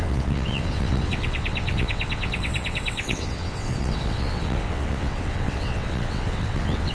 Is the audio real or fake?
fake